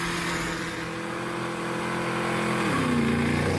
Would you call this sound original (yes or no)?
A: yes